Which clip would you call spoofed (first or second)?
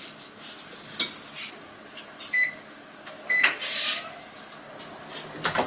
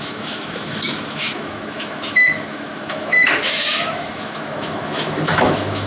second